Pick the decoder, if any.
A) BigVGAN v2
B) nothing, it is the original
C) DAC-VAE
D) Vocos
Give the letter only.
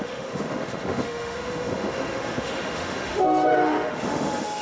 C